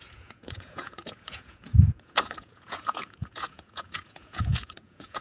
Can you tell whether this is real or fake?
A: fake